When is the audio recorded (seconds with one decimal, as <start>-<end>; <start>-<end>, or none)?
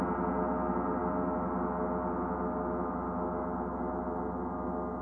0.0-5.0